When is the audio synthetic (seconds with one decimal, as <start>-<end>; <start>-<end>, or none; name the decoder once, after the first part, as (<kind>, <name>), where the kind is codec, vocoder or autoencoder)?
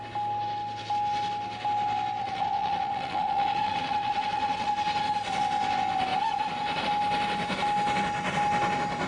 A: 2.2-4.7 (vocoder, WaveNeXt)